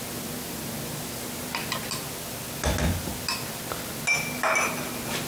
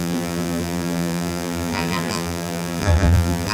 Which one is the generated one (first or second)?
second